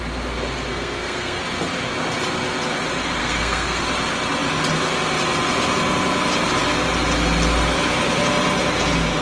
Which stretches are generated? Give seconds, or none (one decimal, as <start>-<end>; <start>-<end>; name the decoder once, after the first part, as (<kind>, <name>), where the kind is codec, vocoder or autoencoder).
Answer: 0.7-1.4 (codec, SNAC); 3.2-3.8